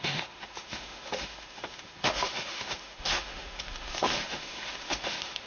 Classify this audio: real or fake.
fake